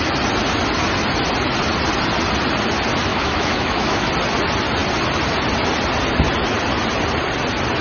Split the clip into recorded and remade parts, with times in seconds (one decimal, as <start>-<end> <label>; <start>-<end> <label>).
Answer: 0.0-3.1 recorded; 3.1-4.1 remade; 4.1-7.8 recorded